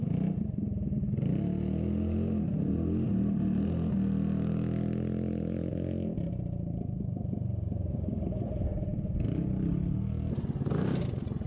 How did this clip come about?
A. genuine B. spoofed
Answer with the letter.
A